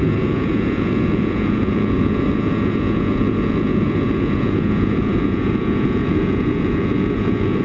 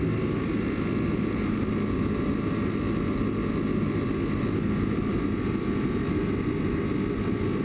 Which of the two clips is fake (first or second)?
first